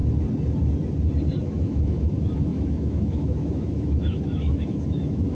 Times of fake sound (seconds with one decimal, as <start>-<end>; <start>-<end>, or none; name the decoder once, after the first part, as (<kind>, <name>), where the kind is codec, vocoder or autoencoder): 1.4-5.3 (autoencoder, DAC-VAE)

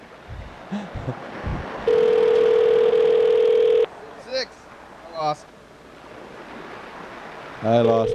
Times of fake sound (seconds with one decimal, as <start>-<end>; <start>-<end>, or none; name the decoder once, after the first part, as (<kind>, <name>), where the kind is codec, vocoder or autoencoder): none

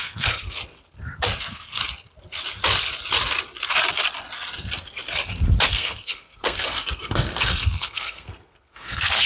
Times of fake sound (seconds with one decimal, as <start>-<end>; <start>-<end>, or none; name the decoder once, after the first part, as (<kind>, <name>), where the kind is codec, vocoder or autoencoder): 0.0-0.6 (codec, SNAC); 1.4-1.8; 5.7-9.3

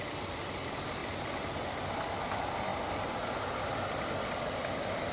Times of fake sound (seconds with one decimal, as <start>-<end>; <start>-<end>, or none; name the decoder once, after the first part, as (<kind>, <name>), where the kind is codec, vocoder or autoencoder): none

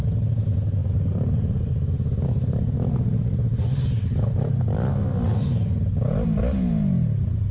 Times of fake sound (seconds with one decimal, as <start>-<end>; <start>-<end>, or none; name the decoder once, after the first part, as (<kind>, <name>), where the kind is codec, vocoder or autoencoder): 0.8-1.7 (vocoder, BigVGAN v2)

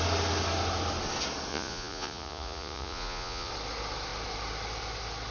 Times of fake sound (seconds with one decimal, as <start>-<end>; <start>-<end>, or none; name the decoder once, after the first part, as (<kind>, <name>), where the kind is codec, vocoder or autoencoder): 1.5-3.5 (vocoder, Vocos)

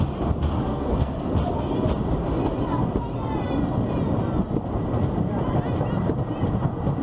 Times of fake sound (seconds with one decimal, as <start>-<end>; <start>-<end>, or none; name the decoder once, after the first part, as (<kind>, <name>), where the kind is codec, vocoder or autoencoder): 0.7-1.3 (codec, SNAC)

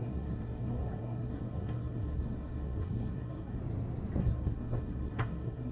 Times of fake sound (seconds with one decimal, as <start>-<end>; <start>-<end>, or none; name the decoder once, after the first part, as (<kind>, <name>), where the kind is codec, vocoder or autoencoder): 0.0-3.6 (codec, SNAC); 4.2-5.7